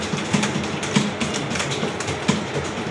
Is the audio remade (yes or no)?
no